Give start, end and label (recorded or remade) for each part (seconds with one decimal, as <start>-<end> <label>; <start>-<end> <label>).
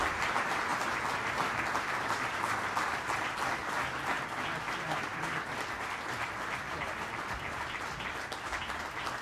0.0-9.2 recorded